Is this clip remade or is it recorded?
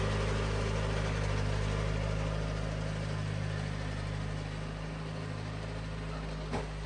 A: recorded